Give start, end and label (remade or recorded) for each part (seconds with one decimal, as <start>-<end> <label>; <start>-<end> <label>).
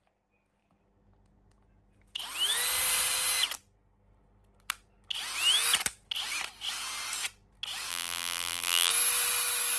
0.0-7.9 recorded; 7.9-8.9 remade; 8.9-9.8 recorded